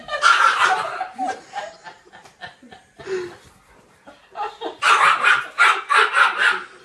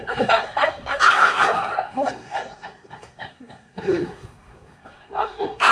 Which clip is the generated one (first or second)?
second